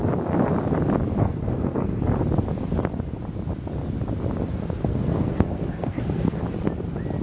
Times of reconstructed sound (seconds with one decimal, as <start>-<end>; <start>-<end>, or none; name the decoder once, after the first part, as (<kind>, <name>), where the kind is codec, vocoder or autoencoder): 1.2-2.0 (codec, SNAC); 4.8-6.4